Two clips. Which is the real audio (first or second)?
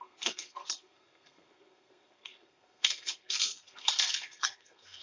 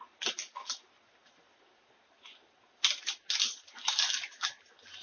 second